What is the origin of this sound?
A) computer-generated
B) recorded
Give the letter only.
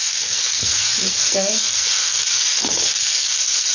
A